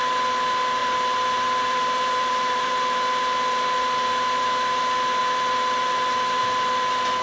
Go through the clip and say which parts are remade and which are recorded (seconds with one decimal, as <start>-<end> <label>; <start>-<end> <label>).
0.0-0.8 recorded; 0.8-2.7 remade; 2.7-7.2 recorded